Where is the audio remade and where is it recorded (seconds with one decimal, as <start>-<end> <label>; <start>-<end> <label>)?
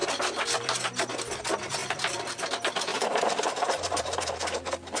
0.0-1.8 recorded; 1.8-2.5 remade; 2.5-2.9 recorded; 2.9-5.0 remade